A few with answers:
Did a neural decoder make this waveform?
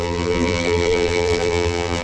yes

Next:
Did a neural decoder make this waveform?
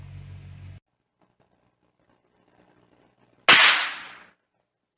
no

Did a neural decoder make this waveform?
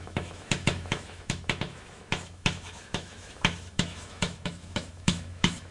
yes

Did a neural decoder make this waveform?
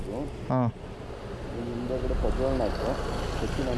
no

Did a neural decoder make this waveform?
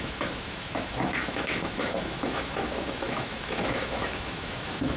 yes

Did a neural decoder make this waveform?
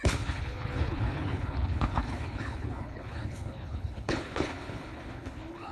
yes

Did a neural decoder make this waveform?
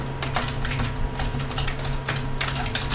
no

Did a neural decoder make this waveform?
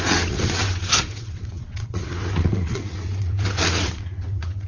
yes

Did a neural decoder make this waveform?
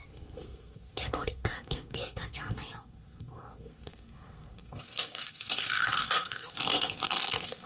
yes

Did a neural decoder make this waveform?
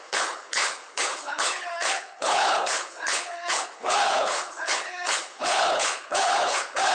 yes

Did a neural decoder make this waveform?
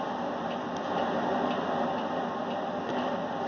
no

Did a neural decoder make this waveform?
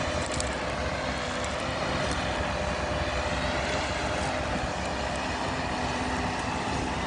no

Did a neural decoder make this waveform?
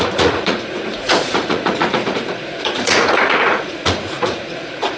yes